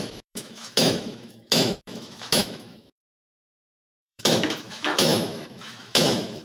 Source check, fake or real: fake